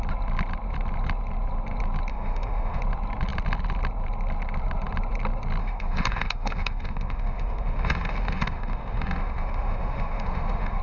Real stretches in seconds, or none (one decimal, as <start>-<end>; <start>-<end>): 0.0-2.1; 2.8-5.6